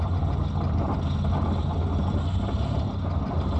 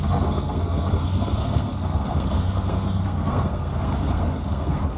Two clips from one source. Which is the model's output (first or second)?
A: second